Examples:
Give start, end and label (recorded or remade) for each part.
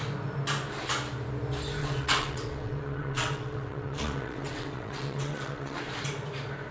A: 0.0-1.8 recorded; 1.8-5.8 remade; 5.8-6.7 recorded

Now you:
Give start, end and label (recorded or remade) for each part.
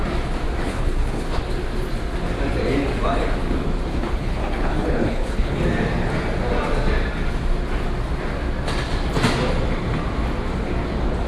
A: 0.0-0.7 recorded; 0.7-1.4 remade; 1.4-3.9 recorded; 3.9-5.6 remade; 5.6-11.3 recorded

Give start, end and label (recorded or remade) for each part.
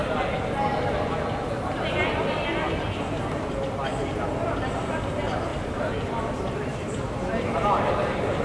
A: 0.0-5.5 recorded; 5.5-8.4 remade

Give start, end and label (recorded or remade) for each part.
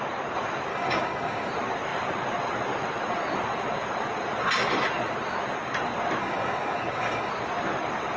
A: 0.0-0.7 recorded; 0.7-1.5 remade; 1.5-6.2 recorded; 6.2-7.3 remade; 7.3-8.2 recorded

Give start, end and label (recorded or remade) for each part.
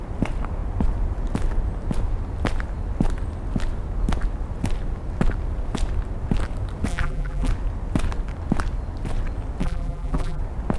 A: 0.0-6.9 recorded; 6.9-7.5 remade; 7.5-9.6 recorded; 9.6-10.4 remade; 10.4-10.8 recorded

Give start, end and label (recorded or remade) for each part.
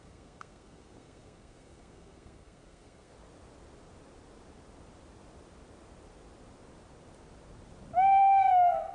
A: 0.0-3.1 remade; 3.1-8.2 recorded; 8.2-8.9 remade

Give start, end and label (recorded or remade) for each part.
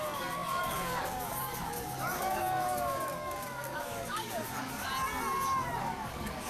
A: 0.0-4.9 remade; 4.9-5.8 recorded; 5.8-6.5 remade